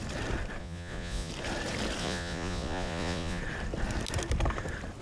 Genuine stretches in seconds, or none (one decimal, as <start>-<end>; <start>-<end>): 0.0-0.6; 1.3-2.0; 3.4-5.0